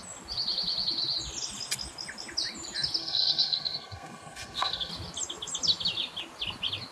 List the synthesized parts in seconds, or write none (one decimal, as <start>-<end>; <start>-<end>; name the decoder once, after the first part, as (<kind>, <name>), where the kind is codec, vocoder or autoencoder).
3.0-4.9 (codec, SNAC)